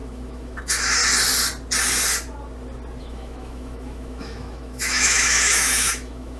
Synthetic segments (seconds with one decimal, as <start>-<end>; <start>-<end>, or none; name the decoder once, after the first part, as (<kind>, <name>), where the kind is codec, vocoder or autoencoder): 0.0-1.0 (autoencoder, DAC-VAE); 3.0-6.4